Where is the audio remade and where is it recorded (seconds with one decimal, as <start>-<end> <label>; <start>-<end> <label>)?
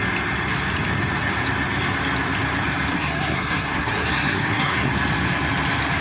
0.0-2.9 recorded; 2.9-4.9 remade; 4.9-6.0 recorded